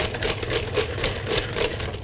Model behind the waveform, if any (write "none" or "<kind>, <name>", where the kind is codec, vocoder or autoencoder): none